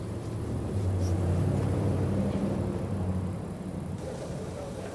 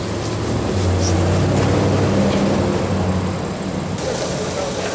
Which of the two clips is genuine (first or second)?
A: second